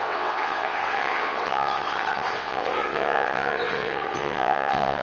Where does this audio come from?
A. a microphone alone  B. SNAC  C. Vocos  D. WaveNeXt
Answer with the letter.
D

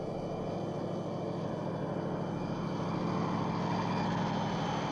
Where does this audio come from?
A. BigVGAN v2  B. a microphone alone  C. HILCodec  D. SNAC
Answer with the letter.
B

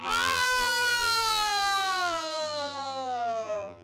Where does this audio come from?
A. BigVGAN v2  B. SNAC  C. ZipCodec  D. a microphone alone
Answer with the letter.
A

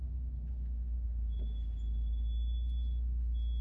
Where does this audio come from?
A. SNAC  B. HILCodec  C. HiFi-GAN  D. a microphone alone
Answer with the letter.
D